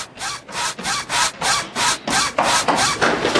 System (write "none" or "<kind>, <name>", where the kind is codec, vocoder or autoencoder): none